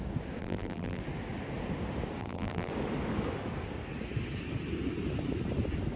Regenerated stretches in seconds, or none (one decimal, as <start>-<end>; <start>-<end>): 0.4-1.0; 2.2-2.7